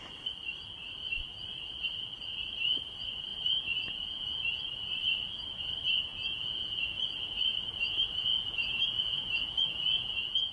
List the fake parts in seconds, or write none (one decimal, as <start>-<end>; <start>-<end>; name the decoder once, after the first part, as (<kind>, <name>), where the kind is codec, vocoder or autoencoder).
3.3-4.6 (vocoder, Vocos); 6.1-6.9; 8.3-10.5